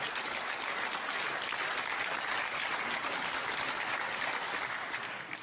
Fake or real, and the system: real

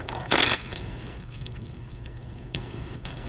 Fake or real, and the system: fake, codec, SNAC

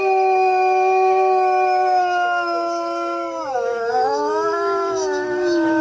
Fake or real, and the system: fake, autoencoder, DAC-VAE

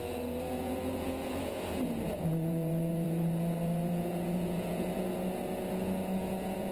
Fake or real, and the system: fake, vocoder, Vocos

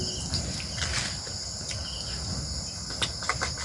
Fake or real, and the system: real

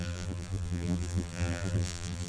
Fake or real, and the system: fake, vocoder, BigVGAN v2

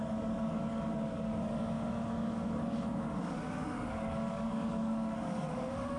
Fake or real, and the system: fake, codec, DAC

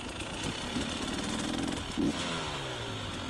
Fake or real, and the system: real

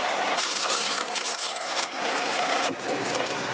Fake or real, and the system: fake, codec, SNAC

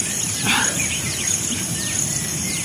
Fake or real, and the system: fake, vocoder, BigVGAN v2